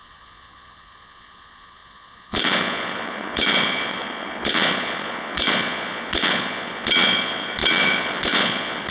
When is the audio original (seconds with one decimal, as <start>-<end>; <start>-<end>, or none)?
none